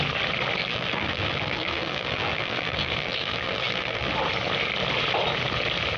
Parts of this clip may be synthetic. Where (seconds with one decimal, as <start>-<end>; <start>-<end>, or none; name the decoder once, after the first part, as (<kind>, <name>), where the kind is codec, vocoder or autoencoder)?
0.6-4.1 (vocoder, BigVGAN v2)